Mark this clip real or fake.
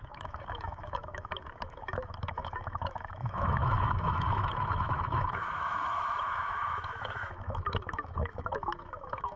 fake